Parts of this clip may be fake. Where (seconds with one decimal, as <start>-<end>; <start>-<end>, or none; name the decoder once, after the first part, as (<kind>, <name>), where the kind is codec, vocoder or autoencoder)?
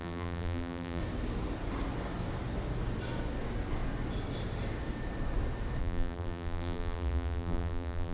0.0-1.0 (vocoder, BigVGAN v2); 5.8-8.1